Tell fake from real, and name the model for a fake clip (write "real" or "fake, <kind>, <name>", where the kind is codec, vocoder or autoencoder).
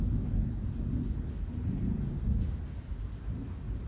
real